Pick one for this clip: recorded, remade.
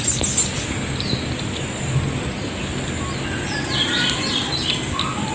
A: recorded